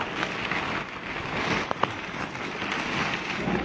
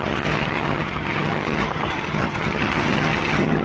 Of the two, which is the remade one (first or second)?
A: second